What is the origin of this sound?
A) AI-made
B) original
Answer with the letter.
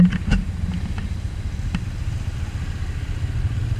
B